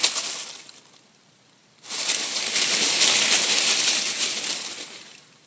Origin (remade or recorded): recorded